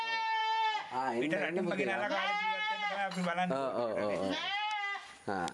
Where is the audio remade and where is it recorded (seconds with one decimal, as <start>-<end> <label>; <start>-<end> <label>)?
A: 0.0-5.5 recorded